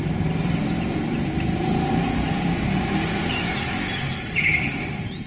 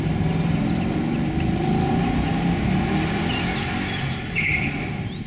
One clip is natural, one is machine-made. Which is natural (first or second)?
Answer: second